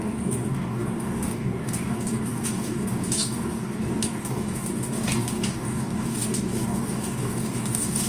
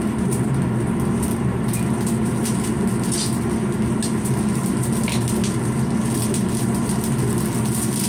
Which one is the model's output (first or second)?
first